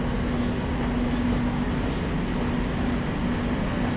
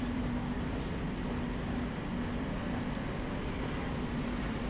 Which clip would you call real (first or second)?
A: first